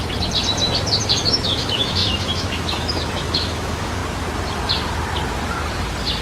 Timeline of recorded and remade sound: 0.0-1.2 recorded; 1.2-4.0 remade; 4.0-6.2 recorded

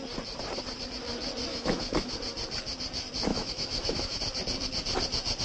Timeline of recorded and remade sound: 0.0-1.5 recorded; 1.5-2.1 remade; 2.1-3.3 recorded; 3.3-4.2 remade; 4.2-5.4 recorded

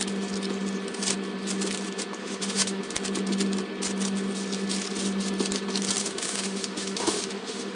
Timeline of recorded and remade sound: 0.0-2.2 recorded; 2.2-2.8 remade; 2.8-6.0 recorded; 6.0-7.8 remade

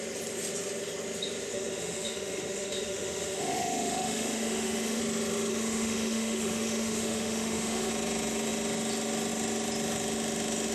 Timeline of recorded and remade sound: 0.0-1.5 recorded; 1.5-5.0 remade; 5.0-5.5 recorded; 5.5-7.9 remade; 7.9-10.7 recorded

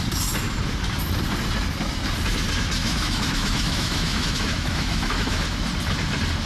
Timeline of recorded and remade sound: 0.0-2.8 recorded; 2.8-5.6 remade; 5.6-6.5 recorded

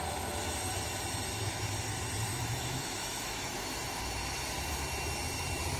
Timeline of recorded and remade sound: 0.0-2.3 recorded; 2.3-4.0 remade; 4.0-5.8 recorded

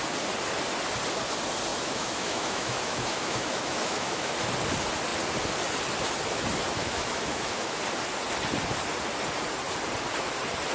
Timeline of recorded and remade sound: 0.0-1.7 recorded; 1.7-4.3 remade; 4.3-6.8 recorded; 6.8-7.8 remade; 7.8-10.7 recorded

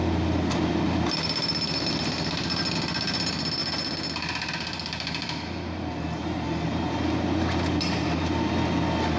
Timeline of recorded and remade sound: 0.0-9.2 recorded